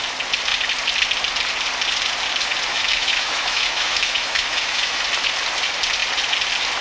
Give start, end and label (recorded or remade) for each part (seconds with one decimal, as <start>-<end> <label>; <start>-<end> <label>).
0.0-2.7 recorded; 2.7-5.0 remade; 5.0-6.8 recorded